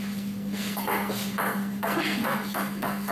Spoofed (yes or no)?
yes